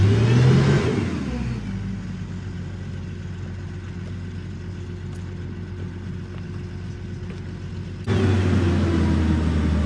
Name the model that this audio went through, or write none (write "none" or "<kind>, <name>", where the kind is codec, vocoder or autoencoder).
none